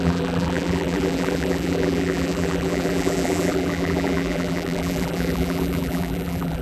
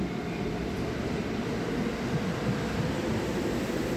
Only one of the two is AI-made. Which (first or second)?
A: first